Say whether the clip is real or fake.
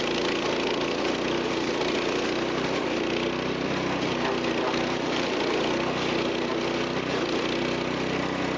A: real